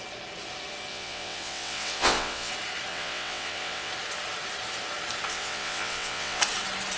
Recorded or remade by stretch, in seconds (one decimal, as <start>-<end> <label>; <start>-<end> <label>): 0.0-0.9 recorded; 0.9-2.5 remade; 2.5-2.9 recorded; 2.9-3.9 remade; 3.9-5.3 recorded; 5.3-6.4 remade; 6.4-7.0 recorded